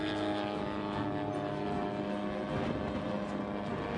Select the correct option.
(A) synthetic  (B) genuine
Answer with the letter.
B